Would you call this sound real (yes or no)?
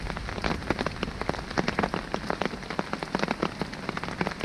yes